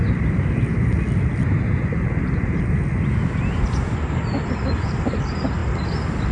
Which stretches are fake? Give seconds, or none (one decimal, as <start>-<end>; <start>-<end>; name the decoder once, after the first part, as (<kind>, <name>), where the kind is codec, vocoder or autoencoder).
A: 5.6-6.3 (vocoder, BigVGAN v2)